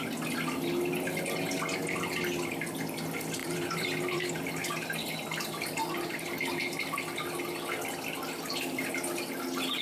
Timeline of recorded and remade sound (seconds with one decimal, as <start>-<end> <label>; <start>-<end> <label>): 0.0-3.4 recorded; 3.4-4.3 remade; 4.3-9.8 recorded

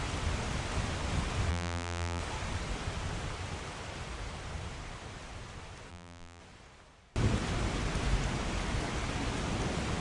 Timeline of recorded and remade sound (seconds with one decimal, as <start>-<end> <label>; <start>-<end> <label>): 0.0-1.5 recorded; 1.5-2.2 remade; 2.2-5.9 recorded; 5.9-6.4 remade; 6.4-10.0 recorded

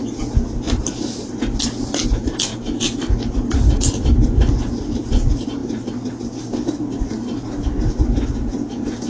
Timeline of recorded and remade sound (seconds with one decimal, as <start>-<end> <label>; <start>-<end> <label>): 0.0-9.1 recorded

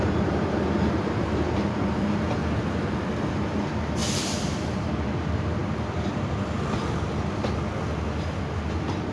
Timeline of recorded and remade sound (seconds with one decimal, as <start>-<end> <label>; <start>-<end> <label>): 0.0-2.4 remade; 2.4-3.3 recorded; 3.3-5.6 remade; 5.6-9.1 recorded